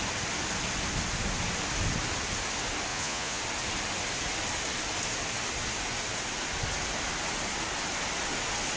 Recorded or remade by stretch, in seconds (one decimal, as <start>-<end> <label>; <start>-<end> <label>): 0.0-2.9 recorded; 2.9-3.4 remade; 3.4-8.8 recorded